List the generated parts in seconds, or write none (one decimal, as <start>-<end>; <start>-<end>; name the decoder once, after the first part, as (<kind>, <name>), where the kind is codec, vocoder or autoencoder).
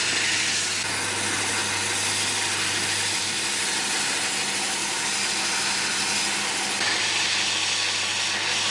none